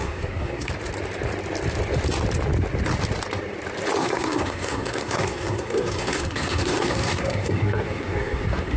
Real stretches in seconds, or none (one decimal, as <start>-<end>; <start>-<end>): 0.7-4.0